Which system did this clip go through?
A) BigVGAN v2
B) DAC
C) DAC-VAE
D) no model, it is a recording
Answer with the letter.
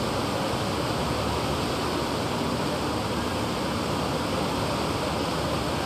D